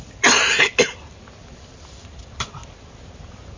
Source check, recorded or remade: recorded